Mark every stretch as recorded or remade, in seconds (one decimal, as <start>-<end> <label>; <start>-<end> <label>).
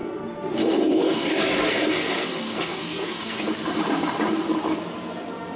0.0-3.4 remade; 3.4-5.6 recorded